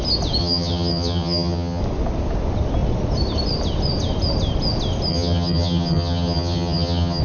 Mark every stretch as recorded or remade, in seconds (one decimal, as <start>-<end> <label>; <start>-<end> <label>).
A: 0.0-0.4 recorded; 0.4-1.8 remade; 1.8-5.1 recorded; 5.1-7.2 remade